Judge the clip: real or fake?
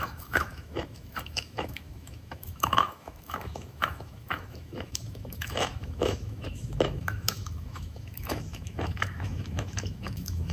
fake